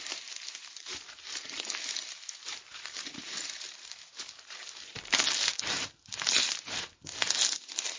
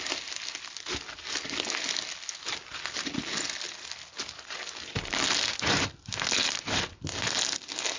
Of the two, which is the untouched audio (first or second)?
second